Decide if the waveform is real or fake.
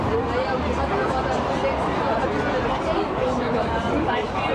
real